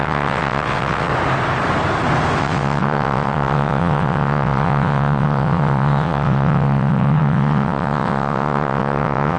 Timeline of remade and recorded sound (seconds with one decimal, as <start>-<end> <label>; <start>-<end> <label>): 0.0-1.1 remade; 1.1-2.4 recorded; 2.4-9.4 remade